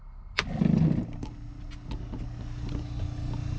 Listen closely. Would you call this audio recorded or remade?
recorded